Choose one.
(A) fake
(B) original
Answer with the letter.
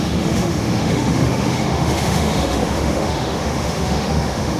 A